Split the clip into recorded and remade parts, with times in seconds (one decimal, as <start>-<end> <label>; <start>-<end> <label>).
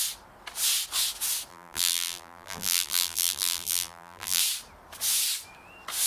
0.0-1.5 recorded; 1.5-4.4 remade; 4.4-6.1 recorded